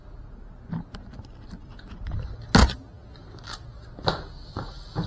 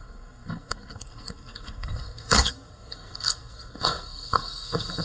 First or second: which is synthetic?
second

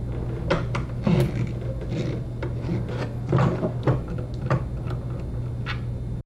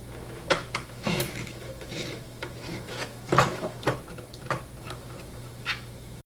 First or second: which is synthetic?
second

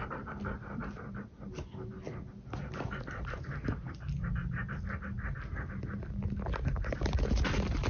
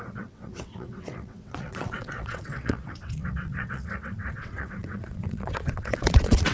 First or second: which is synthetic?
second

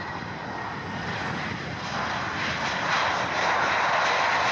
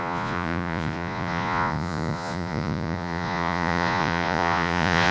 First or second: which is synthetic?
second